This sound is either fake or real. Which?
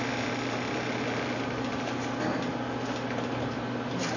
real